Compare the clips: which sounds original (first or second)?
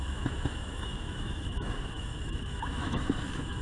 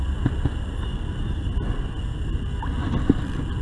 second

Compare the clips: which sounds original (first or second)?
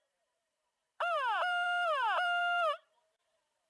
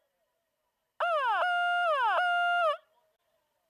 second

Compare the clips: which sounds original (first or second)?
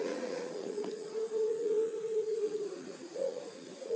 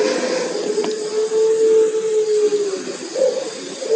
second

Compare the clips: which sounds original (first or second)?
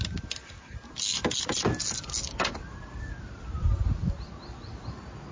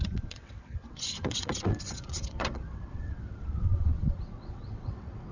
first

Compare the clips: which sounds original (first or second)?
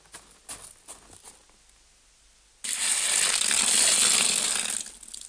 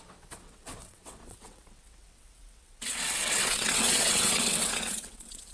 first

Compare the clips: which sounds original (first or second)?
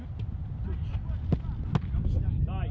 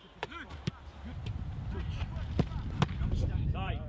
first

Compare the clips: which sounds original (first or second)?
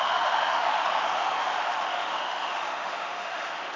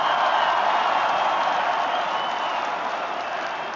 second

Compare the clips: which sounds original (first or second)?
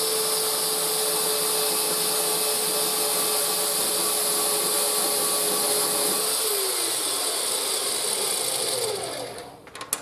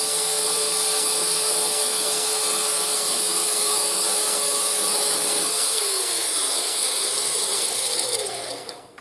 first